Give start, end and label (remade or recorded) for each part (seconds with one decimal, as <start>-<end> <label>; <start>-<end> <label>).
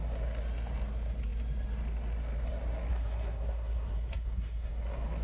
0.0-2.9 recorded; 2.9-4.7 remade; 4.7-5.2 recorded